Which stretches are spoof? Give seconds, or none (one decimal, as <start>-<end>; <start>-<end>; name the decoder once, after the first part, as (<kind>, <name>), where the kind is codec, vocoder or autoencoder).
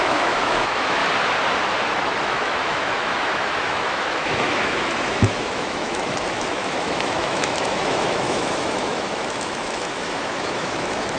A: 0.0-1.0 (autoencoder, DAC-VAE); 2.2-11.2